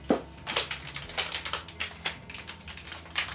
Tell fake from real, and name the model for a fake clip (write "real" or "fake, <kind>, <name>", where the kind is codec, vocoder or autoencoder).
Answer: real